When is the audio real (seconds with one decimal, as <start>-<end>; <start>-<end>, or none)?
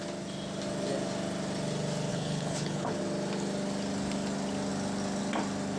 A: 0.0-2.1; 3.0-5.8